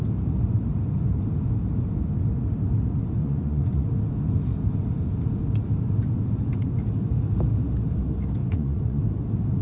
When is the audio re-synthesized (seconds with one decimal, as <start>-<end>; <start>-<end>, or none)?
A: 3.2-3.9; 8.4-9.0